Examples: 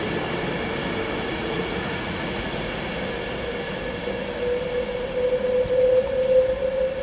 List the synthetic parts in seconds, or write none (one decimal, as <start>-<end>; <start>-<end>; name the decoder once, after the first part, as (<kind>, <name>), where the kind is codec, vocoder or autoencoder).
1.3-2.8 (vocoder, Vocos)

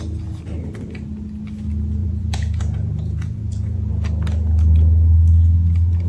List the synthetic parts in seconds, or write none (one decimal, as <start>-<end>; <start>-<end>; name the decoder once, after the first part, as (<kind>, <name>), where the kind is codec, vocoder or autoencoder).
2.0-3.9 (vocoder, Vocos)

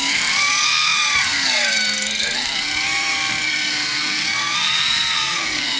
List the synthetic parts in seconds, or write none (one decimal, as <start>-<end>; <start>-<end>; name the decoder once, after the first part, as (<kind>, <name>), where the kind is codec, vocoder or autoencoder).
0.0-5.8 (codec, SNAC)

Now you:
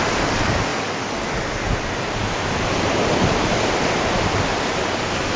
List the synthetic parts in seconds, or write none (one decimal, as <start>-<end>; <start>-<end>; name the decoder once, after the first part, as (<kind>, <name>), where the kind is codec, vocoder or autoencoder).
none

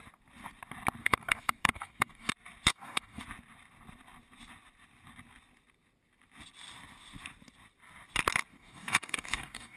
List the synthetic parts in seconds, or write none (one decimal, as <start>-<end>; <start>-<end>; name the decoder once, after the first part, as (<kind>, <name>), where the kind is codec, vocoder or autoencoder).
1.0-2.3 (codec, DAC); 2.7-3.2; 8.5-9.8

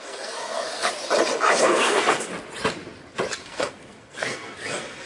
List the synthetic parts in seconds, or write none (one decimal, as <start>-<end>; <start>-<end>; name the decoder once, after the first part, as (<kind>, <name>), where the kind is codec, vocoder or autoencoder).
0.0-0.9 (codec, SNAC); 1.6-2.3; 3.3-5.1